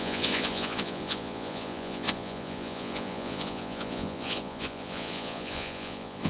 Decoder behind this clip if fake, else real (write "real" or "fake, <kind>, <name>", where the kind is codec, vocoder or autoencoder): fake, vocoder, Vocos